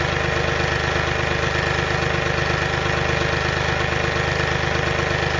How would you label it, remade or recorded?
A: recorded